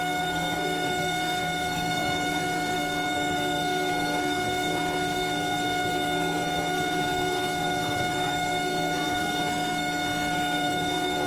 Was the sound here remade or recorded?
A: remade